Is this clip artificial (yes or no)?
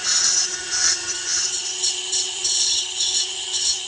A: yes